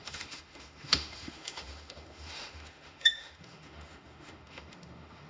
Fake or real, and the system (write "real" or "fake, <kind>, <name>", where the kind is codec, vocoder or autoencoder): fake, autoencoder, DAC-VAE